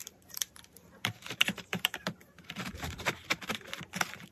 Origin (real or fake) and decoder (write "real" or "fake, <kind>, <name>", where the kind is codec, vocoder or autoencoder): fake, vocoder, BigVGAN v2